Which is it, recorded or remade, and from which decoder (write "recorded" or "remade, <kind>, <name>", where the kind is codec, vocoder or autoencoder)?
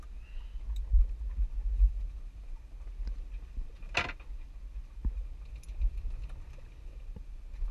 recorded